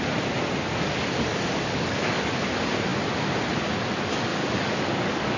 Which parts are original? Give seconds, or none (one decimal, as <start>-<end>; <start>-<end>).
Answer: 0.0-1.3; 2.3-4.3